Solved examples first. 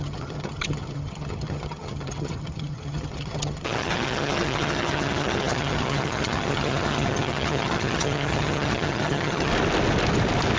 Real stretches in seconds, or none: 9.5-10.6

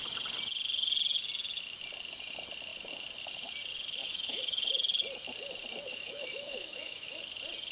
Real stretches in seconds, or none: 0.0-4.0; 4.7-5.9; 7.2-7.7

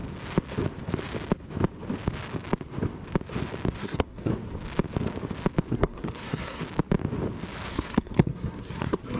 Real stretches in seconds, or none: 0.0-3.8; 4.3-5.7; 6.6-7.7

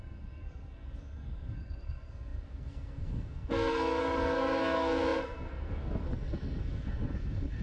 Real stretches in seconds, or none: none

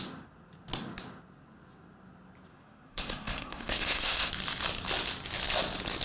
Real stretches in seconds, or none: 0.0-2.5; 4.3-6.0

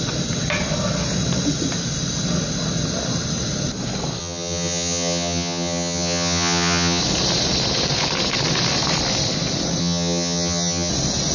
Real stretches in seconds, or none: 0.0-4.2; 7.0-9.8; 10.9-11.3

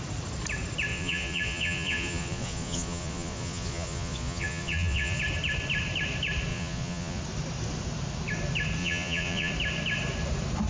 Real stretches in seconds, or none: 0.0-0.9; 5.2-6.5; 7.2-8.8; 9.5-10.7